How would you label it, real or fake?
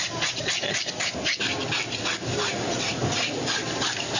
real